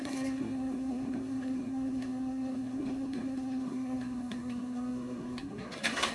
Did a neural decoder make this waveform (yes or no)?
yes